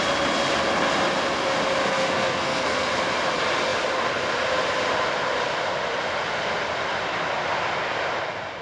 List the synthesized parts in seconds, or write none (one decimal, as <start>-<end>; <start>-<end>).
1.8-2.9